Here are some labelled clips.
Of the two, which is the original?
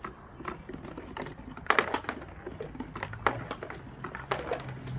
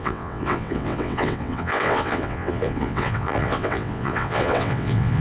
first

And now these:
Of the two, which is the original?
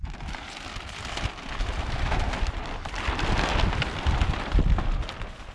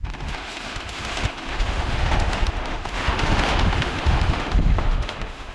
first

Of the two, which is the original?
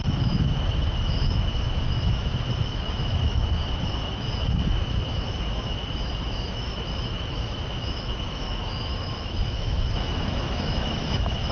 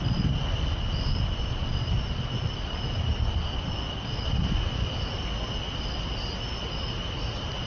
second